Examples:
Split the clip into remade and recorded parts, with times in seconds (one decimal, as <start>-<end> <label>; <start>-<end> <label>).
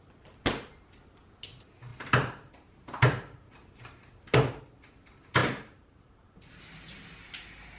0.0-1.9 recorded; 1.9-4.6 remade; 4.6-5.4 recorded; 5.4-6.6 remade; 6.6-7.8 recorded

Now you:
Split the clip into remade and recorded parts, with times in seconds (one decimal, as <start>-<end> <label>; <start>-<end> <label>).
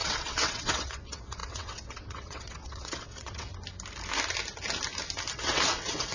0.0-3.5 remade; 3.5-5.3 recorded; 5.3-6.1 remade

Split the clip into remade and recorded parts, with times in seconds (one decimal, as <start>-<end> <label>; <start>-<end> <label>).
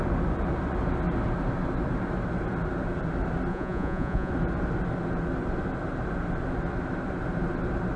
0.0-3.5 recorded; 3.5-4.3 remade; 4.3-8.0 recorded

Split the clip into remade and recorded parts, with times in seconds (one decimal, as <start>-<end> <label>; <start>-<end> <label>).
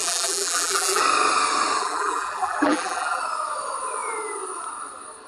0.0-1.0 remade; 1.0-1.8 recorded; 1.8-3.2 remade; 3.2-5.3 recorded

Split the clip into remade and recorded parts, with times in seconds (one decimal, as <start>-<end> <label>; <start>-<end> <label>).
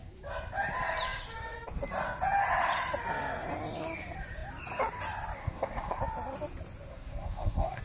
0.0-5.4 recorded; 5.4-6.0 remade; 6.0-6.9 recorded; 6.9-7.8 remade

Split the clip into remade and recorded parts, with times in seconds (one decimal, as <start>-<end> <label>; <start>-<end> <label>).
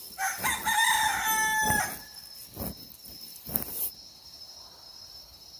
0.0-5.6 recorded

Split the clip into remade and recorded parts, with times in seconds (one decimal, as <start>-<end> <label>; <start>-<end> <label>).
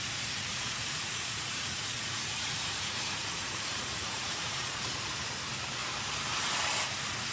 0.0-0.5 recorded; 0.5-4.8 remade; 4.8-7.3 recorded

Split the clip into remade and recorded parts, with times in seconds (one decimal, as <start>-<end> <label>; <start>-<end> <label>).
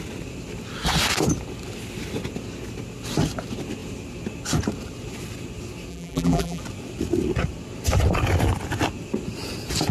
0.0-5.9 recorded; 5.9-6.6 remade; 6.6-9.9 recorded